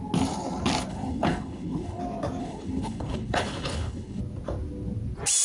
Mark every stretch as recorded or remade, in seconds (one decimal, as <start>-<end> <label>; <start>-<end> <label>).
0.0-0.9 recorded; 0.9-2.0 remade; 2.0-2.4 recorded; 2.4-4.2 remade; 4.2-5.4 recorded